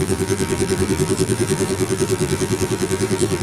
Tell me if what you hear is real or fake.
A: fake